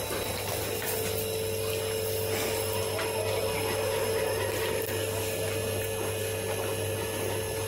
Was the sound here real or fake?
real